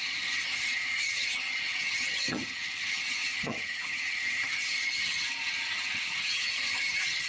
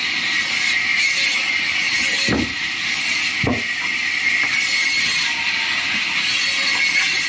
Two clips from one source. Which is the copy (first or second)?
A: first